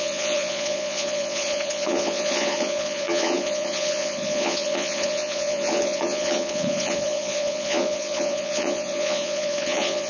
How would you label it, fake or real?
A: fake